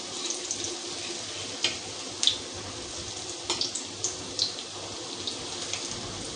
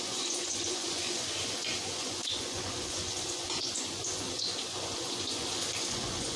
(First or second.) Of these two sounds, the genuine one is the first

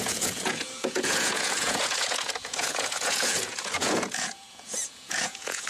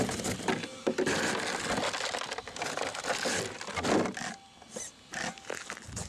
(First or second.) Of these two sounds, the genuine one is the second